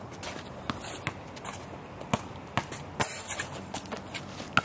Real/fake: real